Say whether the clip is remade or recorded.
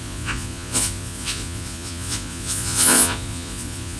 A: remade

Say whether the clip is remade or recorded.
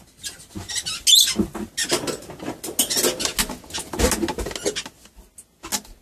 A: recorded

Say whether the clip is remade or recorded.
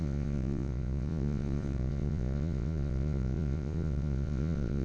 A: remade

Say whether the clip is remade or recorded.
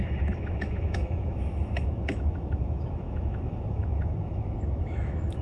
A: remade